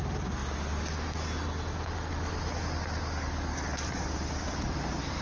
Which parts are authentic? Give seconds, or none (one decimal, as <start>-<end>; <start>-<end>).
0.0-3.5; 4.1-5.2